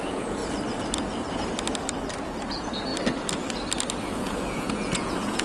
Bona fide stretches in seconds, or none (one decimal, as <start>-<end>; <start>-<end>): 0.4-2.5; 2.9-4.0